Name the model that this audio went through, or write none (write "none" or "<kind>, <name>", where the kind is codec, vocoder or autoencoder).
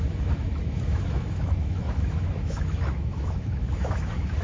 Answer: autoencoder, DAC-VAE